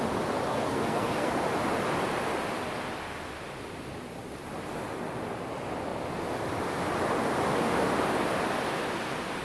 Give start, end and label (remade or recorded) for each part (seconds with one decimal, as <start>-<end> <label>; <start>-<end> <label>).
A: 0.0-0.5 recorded; 0.5-1.3 remade; 1.3-9.4 recorded